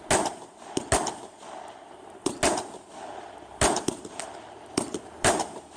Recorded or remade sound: recorded